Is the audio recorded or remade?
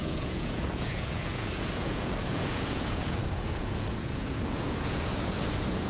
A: remade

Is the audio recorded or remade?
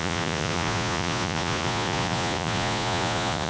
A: remade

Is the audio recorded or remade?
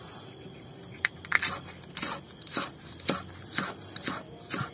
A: recorded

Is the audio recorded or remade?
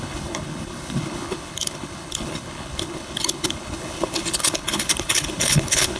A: remade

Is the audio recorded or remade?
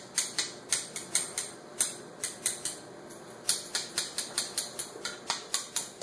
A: recorded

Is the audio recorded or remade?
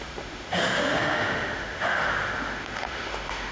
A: remade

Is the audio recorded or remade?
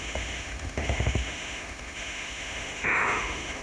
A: remade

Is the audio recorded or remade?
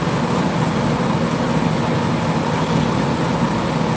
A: recorded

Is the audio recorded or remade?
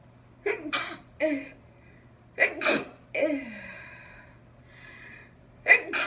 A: recorded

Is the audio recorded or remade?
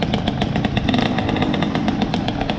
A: recorded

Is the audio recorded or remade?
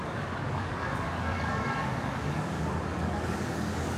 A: remade